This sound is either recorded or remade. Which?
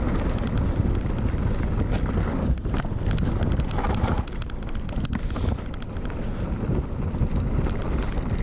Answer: recorded